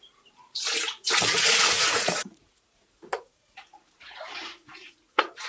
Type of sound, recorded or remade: remade